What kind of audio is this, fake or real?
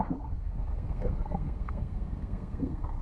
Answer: fake